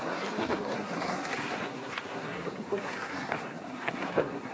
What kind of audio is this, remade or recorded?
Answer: remade